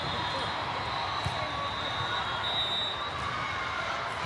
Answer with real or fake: real